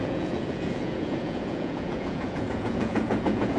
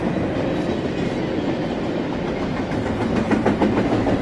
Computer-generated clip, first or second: first